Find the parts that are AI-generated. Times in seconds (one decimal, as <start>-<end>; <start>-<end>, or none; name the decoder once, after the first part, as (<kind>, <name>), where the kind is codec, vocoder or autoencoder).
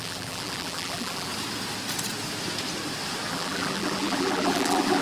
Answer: 0.0-1.3 (vocoder, BigVGAN v2); 3.3-5.0